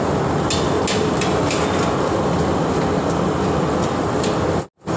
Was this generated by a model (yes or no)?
no